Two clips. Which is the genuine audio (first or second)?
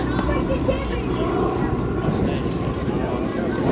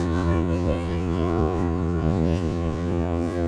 first